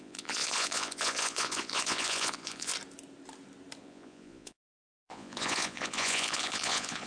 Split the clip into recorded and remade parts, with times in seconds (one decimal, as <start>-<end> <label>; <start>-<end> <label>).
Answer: 0.0-2.7 remade; 2.7-3.8 recorded; 3.8-7.1 remade